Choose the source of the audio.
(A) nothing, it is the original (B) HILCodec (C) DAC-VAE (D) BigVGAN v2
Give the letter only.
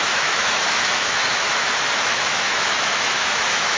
C